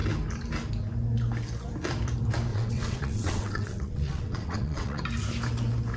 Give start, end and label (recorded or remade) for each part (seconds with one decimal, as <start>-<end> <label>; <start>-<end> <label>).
0.0-2.5 recorded; 2.5-5.0 remade; 5.0-6.0 recorded